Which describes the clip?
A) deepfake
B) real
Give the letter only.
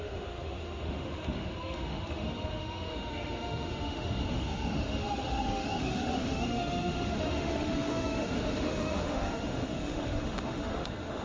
A